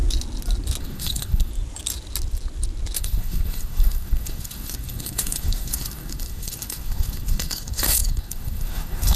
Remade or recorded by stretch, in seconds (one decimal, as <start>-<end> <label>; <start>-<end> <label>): 0.0-0.8 recorded; 0.8-1.5 remade; 1.5-3.0 recorded; 3.0-9.2 remade

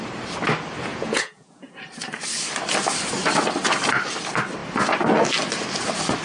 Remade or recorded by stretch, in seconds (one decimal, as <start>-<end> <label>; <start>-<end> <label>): 0.0-0.9 recorded; 0.9-1.8 remade; 1.8-6.2 recorded

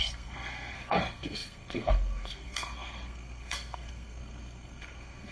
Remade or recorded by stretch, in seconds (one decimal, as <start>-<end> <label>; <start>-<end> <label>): 0.0-5.3 remade

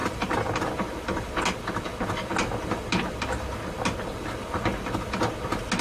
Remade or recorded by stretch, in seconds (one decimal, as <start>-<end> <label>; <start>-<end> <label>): 0.0-0.6 remade; 0.6-5.8 recorded